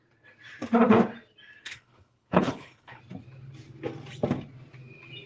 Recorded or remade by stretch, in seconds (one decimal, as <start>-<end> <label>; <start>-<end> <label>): 0.0-1.6 recorded; 1.6-3.0 remade; 3.0-5.3 recorded